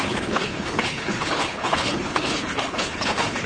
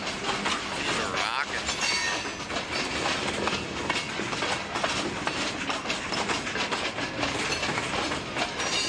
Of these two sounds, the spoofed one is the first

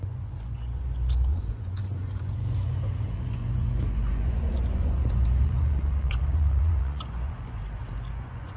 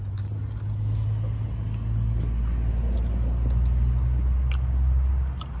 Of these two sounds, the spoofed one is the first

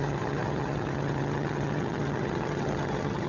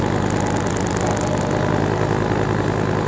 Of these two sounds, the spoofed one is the first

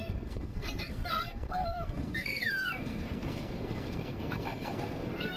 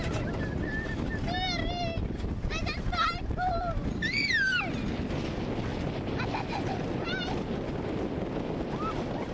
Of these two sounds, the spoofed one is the first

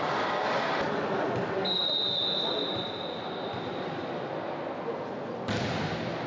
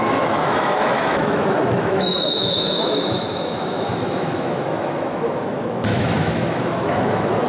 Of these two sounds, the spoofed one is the second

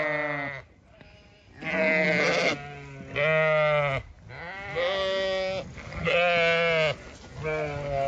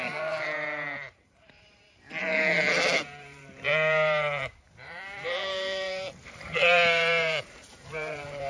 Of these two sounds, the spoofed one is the second